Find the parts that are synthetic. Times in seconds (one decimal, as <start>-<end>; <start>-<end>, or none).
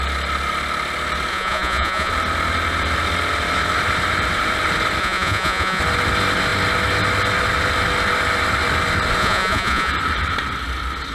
1.3-2.1; 5.0-5.8; 9.2-9.9